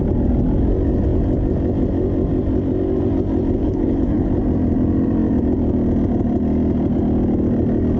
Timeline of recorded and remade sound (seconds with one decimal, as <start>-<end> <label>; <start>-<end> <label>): 0.0-3.6 recorded; 3.6-4.3 remade; 4.3-8.0 recorded